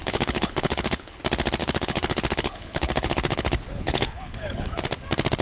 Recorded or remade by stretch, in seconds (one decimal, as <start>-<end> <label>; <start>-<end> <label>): 0.0-1.2 remade; 1.2-1.6 recorded; 1.6-4.8 remade; 4.8-5.4 recorded